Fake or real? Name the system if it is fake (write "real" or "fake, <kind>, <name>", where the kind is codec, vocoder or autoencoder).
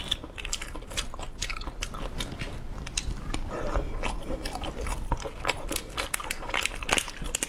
real